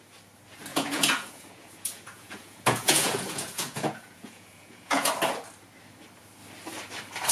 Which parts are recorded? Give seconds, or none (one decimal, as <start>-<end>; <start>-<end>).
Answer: 0.0-0.7; 5.1-7.3